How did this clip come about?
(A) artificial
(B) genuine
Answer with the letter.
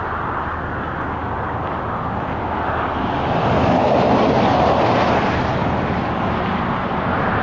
B